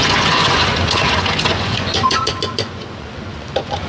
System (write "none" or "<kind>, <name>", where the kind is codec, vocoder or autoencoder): vocoder, Vocos